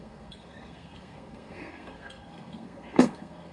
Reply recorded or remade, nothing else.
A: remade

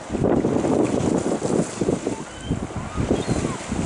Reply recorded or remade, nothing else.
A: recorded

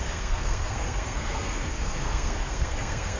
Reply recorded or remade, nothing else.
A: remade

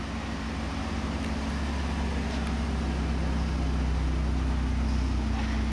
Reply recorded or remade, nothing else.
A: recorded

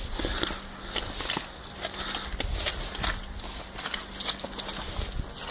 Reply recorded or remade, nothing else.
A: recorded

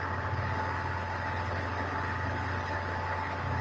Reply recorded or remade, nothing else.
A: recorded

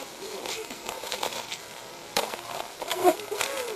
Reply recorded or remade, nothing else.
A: remade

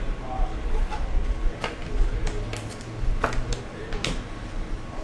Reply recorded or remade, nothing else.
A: recorded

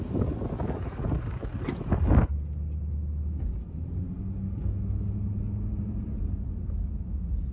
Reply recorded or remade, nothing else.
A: recorded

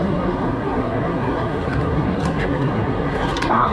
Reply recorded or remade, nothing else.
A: remade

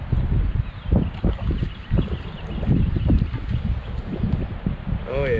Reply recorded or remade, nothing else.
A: recorded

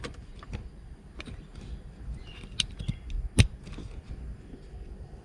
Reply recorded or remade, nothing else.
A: recorded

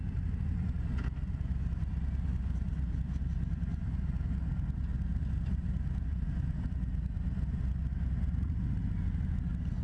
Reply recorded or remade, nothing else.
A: recorded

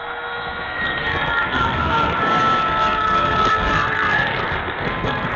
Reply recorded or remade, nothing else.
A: remade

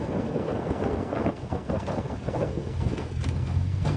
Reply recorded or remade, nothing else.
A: remade